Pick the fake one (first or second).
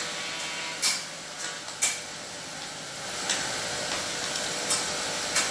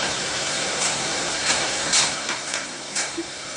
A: second